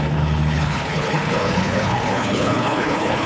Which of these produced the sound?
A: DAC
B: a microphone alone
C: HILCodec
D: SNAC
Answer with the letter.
C